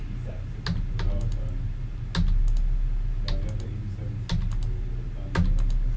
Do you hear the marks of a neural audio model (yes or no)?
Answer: no